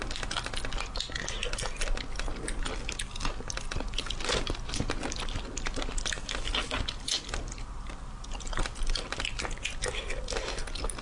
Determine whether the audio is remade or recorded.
recorded